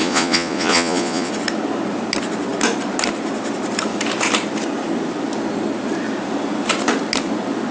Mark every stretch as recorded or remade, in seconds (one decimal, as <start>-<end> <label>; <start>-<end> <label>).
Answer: 0.0-1.3 remade; 1.3-7.7 recorded

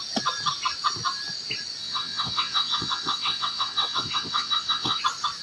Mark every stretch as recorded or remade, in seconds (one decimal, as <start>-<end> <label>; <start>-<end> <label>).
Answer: 0.0-1.8 recorded; 1.8-5.0 remade; 5.0-5.4 recorded

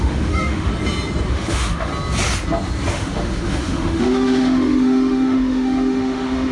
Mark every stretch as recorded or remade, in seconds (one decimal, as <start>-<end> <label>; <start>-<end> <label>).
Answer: 0.0-0.7 remade; 0.7-1.3 recorded; 1.3-1.9 remade; 1.9-2.9 recorded; 2.9-6.5 remade

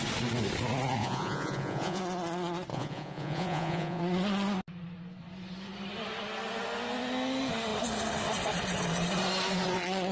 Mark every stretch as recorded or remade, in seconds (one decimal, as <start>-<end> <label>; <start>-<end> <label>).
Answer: 0.0-1.0 recorded; 1.0-2.0 remade; 2.0-2.7 recorded; 2.7-4.0 remade; 4.0-10.1 recorded

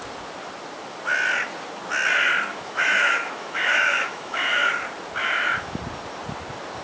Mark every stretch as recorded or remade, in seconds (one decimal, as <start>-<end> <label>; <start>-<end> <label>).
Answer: 0.0-2.5 recorded; 2.5-4.6 remade; 4.6-5.2 recorded; 5.2-5.8 remade; 5.8-6.8 recorded

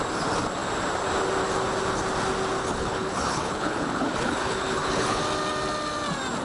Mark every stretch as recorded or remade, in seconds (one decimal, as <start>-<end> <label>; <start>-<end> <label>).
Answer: 0.0-2.6 recorded; 2.6-5.2 remade; 5.2-6.4 recorded